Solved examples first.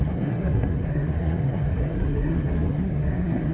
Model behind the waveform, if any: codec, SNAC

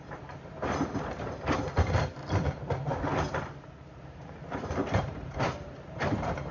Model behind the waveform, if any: vocoder, BigVGAN v2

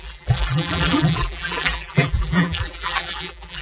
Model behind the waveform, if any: vocoder, BigVGAN v2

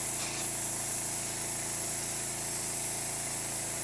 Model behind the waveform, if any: none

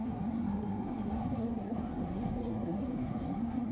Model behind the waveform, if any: codec, SNAC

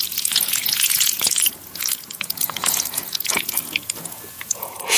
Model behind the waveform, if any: vocoder, Vocos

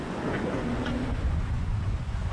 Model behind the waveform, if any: vocoder, Vocos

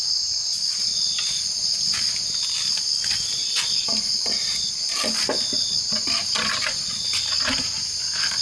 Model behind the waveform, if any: none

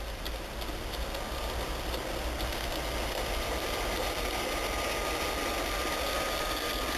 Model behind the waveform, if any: none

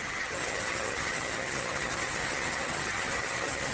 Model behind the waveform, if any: vocoder, HiFi-GAN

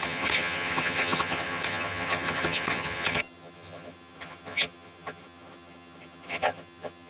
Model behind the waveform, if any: vocoder, HiFi-GAN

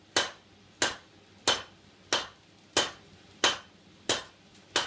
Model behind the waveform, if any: none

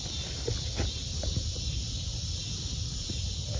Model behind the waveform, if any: none